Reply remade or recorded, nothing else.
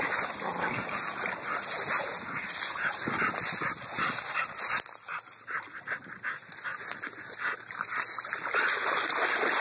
recorded